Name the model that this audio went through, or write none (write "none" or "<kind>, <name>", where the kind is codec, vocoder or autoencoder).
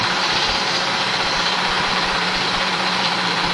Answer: vocoder, BigVGAN v2